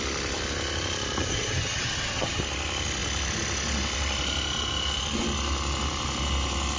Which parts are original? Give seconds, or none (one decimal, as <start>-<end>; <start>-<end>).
0.0-1.2; 2.4-6.8

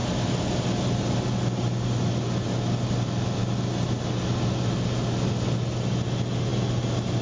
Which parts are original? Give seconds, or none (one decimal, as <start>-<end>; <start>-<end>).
0.0-7.2

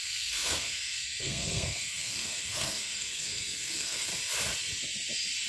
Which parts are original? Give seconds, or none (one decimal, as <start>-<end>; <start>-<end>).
4.1-5.5

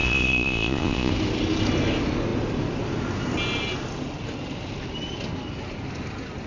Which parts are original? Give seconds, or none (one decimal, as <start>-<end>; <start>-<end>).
1.1-6.5

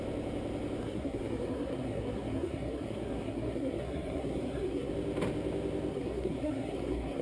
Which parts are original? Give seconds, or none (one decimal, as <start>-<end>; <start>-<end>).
0.0-0.8; 4.9-5.9